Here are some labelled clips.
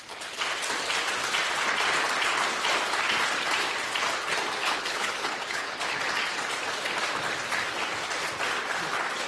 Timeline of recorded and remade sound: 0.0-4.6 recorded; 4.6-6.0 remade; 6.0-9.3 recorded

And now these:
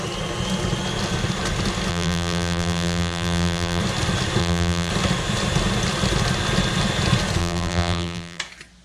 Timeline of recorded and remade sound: 0.0-1.9 recorded; 1.9-3.8 remade; 3.8-4.4 recorded; 4.4-4.9 remade; 4.9-7.4 recorded; 7.4-8.4 remade; 8.4-8.8 recorded

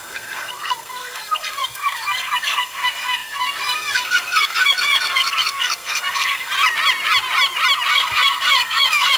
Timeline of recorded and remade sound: 0.0-6.5 remade; 6.5-7.9 recorded; 7.9-9.2 remade

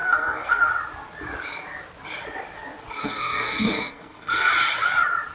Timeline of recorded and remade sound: 0.0-0.7 remade; 0.7-2.9 recorded; 2.9-4.5 remade; 4.5-5.3 recorded

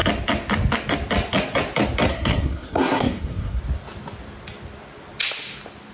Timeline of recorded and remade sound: 0.0-2.1 recorded; 2.1-3.6 remade; 3.6-5.9 recorded

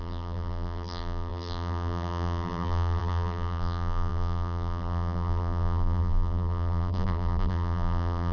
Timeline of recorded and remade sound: 0.0-8.3 remade

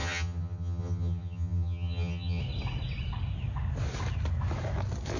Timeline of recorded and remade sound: 0.0-2.4 remade; 2.4-5.2 recorded

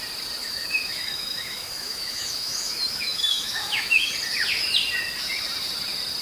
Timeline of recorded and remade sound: 0.0-0.4 recorded; 0.4-4.1 remade; 4.1-6.2 recorded